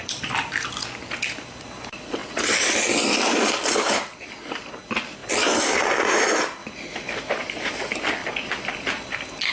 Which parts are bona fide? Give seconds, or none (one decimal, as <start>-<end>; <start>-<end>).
6.6-7.3; 8.2-8.7